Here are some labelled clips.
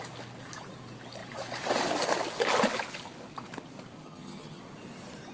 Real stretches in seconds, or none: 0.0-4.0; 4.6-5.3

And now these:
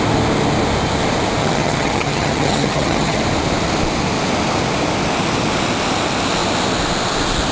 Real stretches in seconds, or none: 0.0-1.4; 3.2-7.5

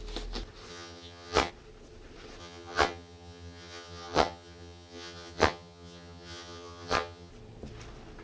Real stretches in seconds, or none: 0.0-0.7; 1.5-2.4; 7.3-8.2

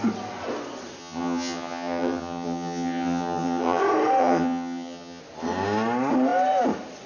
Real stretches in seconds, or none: 0.0-1.0; 3.8-4.2; 5.2-7.1

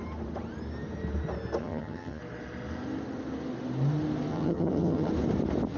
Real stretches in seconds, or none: 0.0-1.6; 2.2-4.3; 5.1-5.8

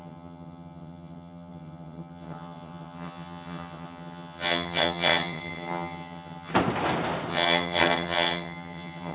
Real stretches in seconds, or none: 6.5-7.3

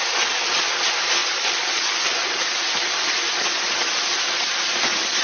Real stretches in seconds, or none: 0.0-5.2

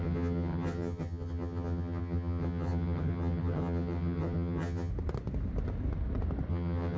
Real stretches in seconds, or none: 4.9-6.5